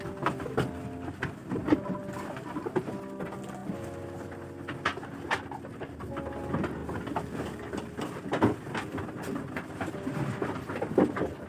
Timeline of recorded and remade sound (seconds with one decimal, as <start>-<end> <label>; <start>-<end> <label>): 0.0-1.4 recorded; 1.4-2.0 remade; 2.0-11.5 recorded